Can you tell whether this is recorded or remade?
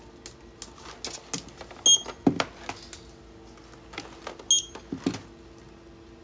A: recorded